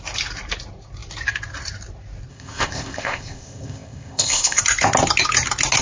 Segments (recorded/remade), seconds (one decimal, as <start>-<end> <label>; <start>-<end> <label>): 0.0-2.3 recorded; 2.3-4.6 remade; 4.6-5.8 recorded